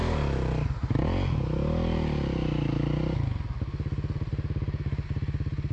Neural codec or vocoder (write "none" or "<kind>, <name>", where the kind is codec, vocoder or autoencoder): none